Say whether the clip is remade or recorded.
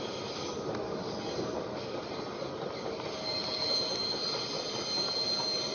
recorded